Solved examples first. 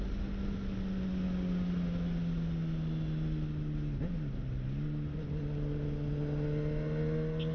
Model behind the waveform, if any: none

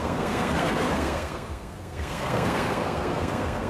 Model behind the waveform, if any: codec, SNAC